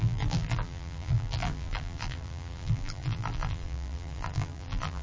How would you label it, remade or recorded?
remade